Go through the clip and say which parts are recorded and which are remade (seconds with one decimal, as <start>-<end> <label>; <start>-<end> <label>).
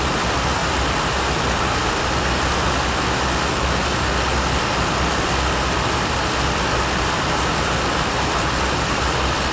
0.0-9.5 recorded